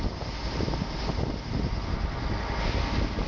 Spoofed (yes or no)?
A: no